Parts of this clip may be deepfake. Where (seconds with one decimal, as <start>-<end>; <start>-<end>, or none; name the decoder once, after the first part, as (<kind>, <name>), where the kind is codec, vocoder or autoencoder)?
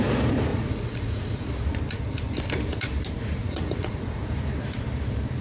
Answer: 0.5-1.5 (vocoder, Vocos); 3.4-4.2